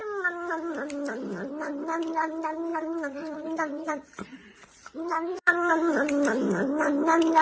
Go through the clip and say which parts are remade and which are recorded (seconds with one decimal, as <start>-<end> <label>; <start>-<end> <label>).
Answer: 0.0-2.7 recorded; 2.7-5.7 remade; 5.7-7.4 recorded